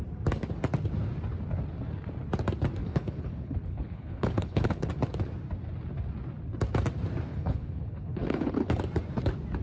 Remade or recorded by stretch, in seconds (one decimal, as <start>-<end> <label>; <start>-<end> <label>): 0.0-2.8 recorded; 2.8-4.9 remade; 4.9-7.3 recorded; 7.3-8.8 remade; 8.8-9.6 recorded